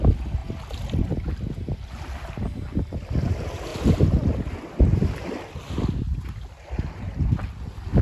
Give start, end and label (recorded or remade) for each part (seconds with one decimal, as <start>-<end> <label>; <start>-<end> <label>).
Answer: 0.0-8.0 recorded

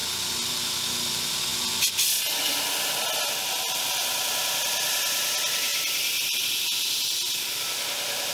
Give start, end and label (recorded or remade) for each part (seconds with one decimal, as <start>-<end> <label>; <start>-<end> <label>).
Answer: 0.0-8.3 recorded

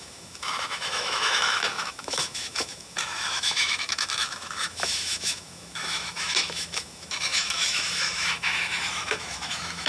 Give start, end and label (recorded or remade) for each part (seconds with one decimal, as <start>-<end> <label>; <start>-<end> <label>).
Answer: 0.0-9.9 remade

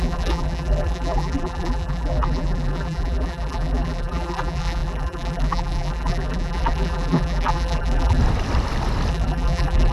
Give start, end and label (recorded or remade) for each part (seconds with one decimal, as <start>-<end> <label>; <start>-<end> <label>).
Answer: 0.0-8.2 remade; 8.2-9.1 recorded; 9.1-9.9 remade